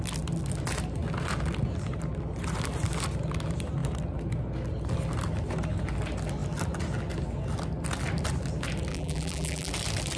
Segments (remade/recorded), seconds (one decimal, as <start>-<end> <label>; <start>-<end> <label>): 0.0-8.9 recorded; 8.9-9.7 remade; 9.7-10.2 recorded